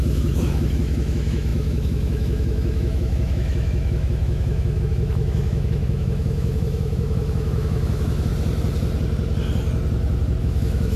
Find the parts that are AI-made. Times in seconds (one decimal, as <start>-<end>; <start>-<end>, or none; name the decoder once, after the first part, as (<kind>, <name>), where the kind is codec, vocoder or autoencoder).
0.0-8.3 (autoencoder, DAC-VAE); 10.4-11.0